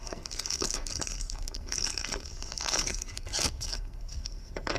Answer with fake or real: fake